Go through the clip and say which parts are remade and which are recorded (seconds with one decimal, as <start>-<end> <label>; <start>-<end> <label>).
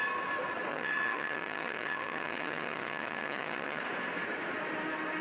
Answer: 0.0-0.7 recorded; 0.7-3.8 remade; 3.8-5.2 recorded